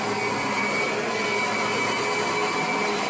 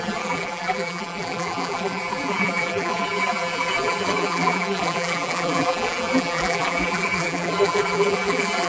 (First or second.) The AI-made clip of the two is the second